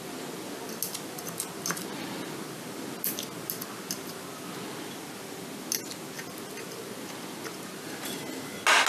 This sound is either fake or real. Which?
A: real